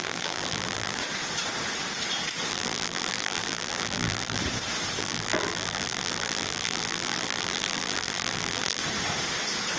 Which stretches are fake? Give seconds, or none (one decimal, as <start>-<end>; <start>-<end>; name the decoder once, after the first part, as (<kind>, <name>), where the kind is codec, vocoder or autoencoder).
0.0-1.0 (vocoder, BigVGAN v2); 2.5-4.4; 5.0-8.8